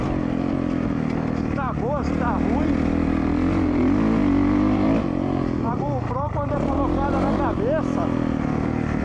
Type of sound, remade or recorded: recorded